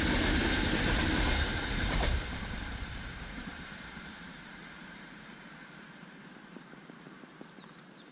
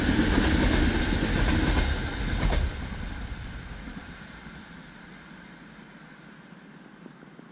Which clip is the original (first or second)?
second